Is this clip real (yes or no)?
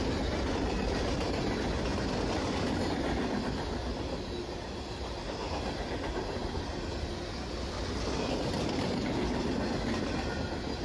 yes